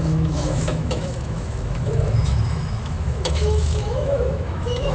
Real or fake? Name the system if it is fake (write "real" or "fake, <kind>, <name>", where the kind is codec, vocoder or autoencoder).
fake, autoencoder, DAC-VAE